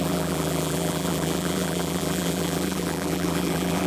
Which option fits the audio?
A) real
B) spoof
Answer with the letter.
B